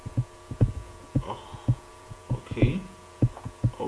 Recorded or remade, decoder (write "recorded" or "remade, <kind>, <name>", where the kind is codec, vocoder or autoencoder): remade, vocoder, Vocos